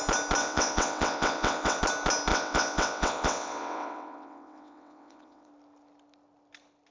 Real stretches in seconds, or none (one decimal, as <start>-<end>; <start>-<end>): 0.0-0.4; 1.8-2.3; 5.5-6.9